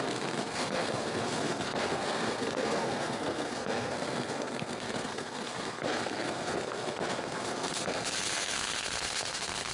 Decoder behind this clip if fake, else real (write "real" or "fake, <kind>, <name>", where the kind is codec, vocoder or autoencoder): fake, codec, SNAC